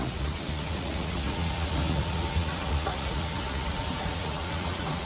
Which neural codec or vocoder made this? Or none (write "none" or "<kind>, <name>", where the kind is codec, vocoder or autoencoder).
vocoder, Vocos